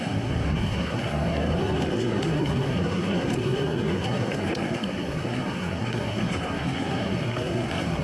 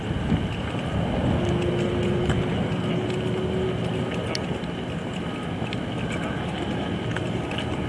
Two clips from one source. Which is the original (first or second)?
second